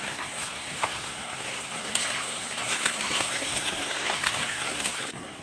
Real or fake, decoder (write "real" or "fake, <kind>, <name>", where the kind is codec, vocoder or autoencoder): fake, codec, SNAC